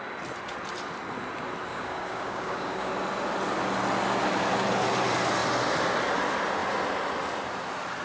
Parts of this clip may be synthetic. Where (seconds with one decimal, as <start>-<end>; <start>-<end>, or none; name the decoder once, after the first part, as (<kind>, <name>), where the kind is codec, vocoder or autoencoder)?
1.7-2.9 (codec, DAC)